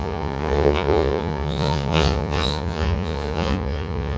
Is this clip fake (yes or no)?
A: yes